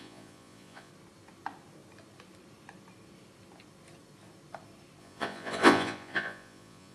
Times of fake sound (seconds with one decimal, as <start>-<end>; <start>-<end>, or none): 0.0-0.9; 5.0-6.9